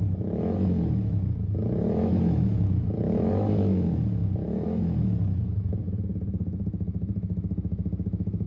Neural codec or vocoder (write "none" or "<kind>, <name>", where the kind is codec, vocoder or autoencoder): autoencoder, DAC-VAE